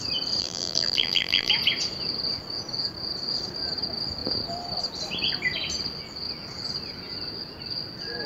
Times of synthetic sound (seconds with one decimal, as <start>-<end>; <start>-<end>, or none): 0.4-1.5

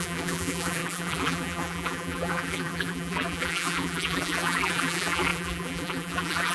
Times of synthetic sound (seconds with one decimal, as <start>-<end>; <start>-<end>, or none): 0.0-6.5

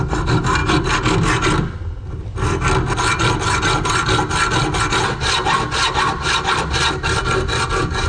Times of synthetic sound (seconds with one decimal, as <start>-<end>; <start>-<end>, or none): none

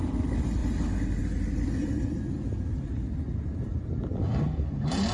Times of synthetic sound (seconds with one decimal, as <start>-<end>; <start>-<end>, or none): none